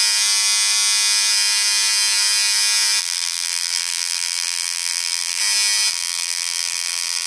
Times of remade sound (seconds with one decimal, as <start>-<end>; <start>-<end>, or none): 3.0-5.4; 5.9-7.3